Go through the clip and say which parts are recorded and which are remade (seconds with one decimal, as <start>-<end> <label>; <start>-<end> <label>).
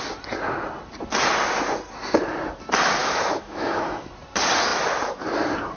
0.0-3.0 recorded; 3.0-4.1 remade; 4.1-5.8 recorded